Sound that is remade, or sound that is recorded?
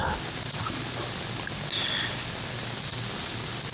recorded